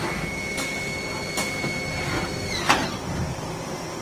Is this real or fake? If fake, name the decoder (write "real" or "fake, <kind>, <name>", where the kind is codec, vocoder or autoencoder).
real